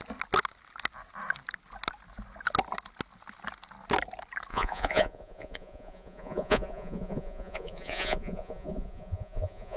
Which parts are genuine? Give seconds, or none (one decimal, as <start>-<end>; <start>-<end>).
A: 0.0-4.5